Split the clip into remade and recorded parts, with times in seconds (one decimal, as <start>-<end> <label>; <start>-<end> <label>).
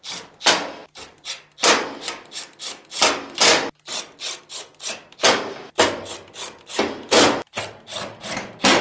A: 0.0-8.8 recorded